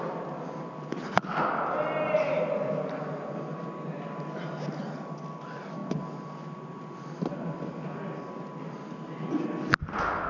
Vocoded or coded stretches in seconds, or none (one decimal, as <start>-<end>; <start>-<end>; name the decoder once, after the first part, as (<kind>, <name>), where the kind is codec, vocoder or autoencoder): none